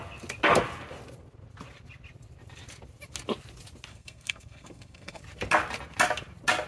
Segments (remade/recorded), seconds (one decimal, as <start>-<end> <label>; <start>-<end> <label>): 0.0-3.9 recorded; 3.9-5.2 remade; 5.2-6.7 recorded